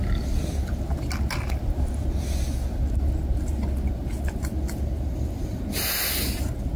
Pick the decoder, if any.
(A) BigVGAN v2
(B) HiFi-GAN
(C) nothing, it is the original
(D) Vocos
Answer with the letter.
C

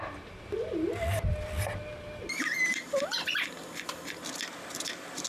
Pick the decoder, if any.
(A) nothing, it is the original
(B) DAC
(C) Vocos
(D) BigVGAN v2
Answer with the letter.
A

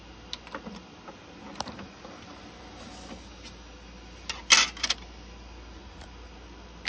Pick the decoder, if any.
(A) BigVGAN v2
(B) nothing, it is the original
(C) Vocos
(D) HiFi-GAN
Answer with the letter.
B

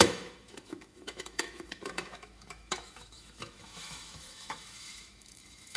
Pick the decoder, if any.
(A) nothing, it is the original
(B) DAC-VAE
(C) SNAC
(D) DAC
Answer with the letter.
B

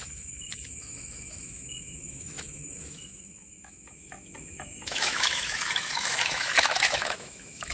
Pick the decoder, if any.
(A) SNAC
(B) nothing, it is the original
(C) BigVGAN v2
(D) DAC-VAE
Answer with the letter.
D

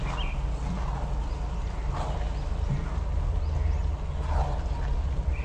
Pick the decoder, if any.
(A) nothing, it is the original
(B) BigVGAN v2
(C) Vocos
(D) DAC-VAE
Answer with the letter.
A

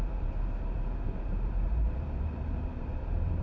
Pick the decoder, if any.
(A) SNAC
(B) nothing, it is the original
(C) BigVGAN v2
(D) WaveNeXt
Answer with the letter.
C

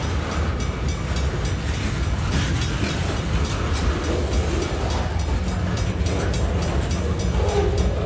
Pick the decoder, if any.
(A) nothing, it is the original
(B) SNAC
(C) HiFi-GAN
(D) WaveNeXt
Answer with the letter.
A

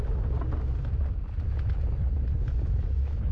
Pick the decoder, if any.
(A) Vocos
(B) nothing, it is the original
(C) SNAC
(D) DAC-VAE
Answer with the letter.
B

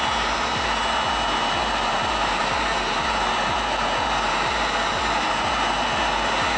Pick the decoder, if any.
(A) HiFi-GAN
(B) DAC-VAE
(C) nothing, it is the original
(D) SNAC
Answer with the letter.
C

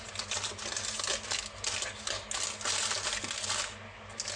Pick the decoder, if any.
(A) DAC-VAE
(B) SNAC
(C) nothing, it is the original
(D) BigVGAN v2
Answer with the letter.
C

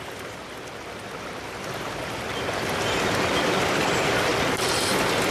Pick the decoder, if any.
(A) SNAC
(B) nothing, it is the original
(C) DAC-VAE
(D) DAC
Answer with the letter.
B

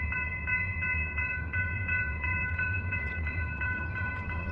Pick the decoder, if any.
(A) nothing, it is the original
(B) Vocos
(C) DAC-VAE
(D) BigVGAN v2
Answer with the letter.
B